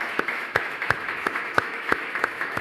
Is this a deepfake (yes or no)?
yes